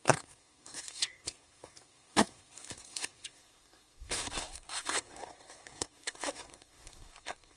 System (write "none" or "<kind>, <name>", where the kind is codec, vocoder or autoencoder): codec, SNAC